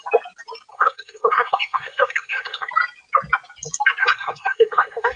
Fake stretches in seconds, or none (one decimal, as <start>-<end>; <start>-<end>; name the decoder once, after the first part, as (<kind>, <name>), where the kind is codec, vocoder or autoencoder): 0.7-2.7 (codec, SNAC); 4.0-5.2